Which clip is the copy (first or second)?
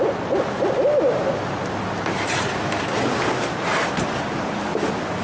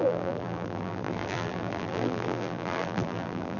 second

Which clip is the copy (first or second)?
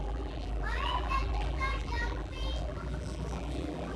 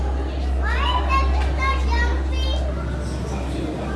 first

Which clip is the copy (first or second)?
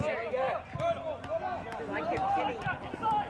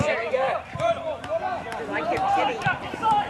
second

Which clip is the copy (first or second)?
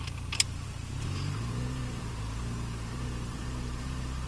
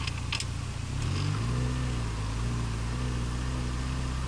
first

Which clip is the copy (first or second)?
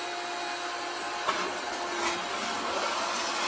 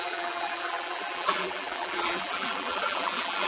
second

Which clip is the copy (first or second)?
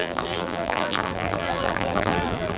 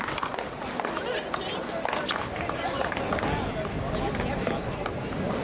first